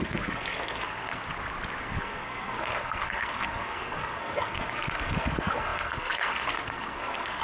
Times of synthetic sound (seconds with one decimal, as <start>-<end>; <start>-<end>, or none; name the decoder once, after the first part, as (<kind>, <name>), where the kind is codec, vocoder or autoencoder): 0.0-1.2 (codec, SNAC); 1.8-7.4

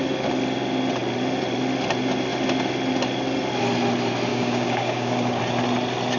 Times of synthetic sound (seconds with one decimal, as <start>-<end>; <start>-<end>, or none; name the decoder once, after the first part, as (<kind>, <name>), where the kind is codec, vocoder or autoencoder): 4.3-5.4 (codec, DAC)

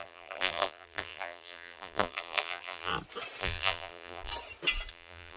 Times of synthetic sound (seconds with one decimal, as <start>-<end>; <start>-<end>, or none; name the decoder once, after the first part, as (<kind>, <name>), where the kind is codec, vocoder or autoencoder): 0.0-2.9 (vocoder, BigVGAN v2); 3.4-4.3; 4.9-5.4

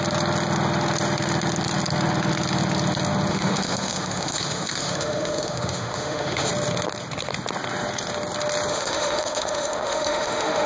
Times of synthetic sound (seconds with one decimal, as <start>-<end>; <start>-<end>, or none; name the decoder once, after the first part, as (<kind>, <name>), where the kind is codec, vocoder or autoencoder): 3.3-6.5 (autoencoder, DAC-VAE); 8.7-10.7

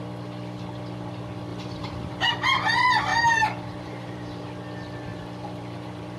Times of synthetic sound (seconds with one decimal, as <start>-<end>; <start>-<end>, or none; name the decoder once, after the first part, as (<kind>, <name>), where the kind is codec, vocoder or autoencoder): 1.5-2.3 (vocoder, BigVGAN v2); 3.1-4.4; 5.1-6.2

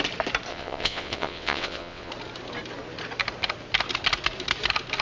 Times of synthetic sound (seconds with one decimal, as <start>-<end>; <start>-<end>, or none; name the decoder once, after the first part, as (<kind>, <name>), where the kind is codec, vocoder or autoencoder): 0.5-2.1 (vocoder, WaveNeXt)